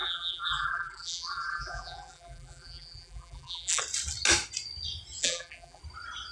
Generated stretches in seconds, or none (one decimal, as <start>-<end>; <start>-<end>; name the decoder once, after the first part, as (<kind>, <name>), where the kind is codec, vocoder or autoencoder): 0.0-3.8 (vocoder, BigVGAN v2); 5.2-5.8